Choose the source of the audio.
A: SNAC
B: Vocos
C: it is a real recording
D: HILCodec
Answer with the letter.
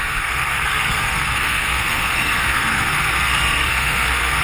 A